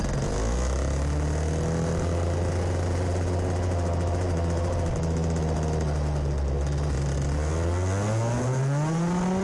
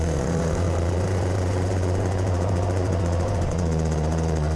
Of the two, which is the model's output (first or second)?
second